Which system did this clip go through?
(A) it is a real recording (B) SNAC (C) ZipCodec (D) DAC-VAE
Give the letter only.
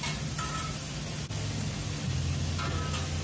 A